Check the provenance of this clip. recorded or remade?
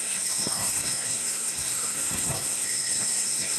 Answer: remade